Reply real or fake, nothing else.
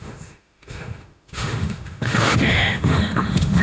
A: fake